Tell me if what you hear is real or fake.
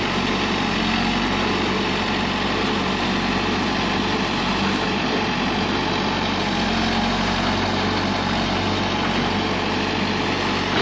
real